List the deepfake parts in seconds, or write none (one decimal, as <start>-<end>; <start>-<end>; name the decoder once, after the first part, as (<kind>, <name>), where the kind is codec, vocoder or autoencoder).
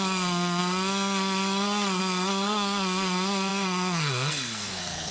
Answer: 0.0-5.1 (codec, SNAC)